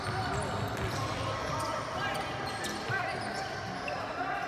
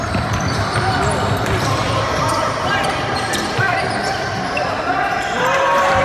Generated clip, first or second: second